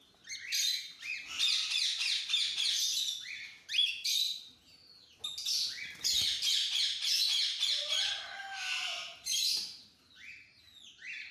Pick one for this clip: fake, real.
real